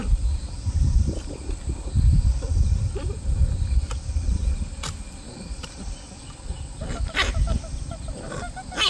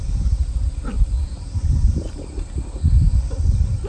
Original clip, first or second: second